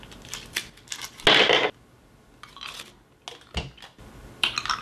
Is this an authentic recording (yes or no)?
yes